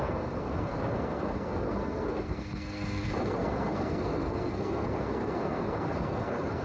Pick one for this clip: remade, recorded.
remade